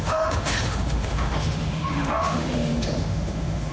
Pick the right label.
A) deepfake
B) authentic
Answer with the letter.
A